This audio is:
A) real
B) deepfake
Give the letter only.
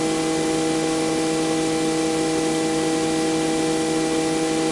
A